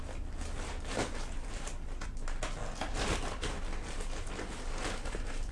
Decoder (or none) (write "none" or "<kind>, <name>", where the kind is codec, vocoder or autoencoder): none